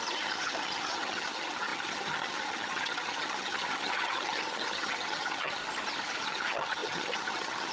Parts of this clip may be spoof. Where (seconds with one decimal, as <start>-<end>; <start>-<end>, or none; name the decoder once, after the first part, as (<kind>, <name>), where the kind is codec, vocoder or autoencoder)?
0.0-5.6 (vocoder, HiFi-GAN); 6.2-7.7